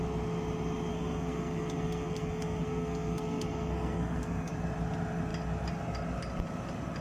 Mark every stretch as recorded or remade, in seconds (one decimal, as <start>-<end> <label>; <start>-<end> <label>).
0.0-0.9 recorded; 0.9-4.5 remade; 4.5-7.0 recorded